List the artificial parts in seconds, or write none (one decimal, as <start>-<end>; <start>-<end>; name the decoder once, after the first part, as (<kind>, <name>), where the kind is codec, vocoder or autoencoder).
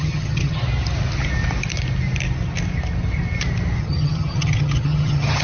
0.0-0.6 (vocoder, HiFi-GAN); 3.8-5.4